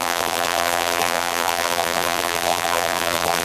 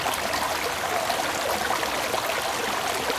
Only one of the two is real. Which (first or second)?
second